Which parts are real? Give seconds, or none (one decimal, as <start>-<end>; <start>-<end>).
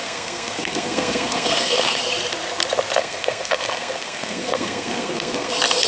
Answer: 2.0-3.0; 5.5-5.9